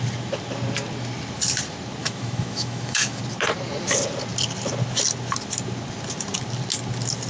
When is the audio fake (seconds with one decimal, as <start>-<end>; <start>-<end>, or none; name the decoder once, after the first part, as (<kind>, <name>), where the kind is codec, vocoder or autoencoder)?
2.0-3.2 (autoencoder, DAC-VAE)